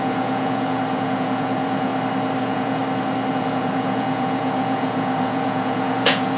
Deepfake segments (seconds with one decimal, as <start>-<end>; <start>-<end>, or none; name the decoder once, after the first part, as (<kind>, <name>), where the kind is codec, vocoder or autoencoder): 0.0-1.9 (vocoder, Vocos); 2.4-2.8; 3.3-6.4